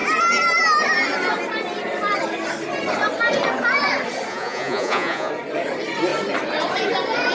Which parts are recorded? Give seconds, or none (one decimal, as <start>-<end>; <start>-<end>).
0.0-4.3; 5.3-7.3